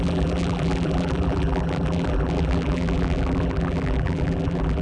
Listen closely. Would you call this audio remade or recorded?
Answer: remade